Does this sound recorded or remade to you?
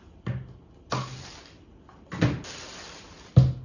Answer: recorded